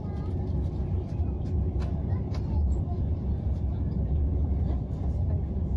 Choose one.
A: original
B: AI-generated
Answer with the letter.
A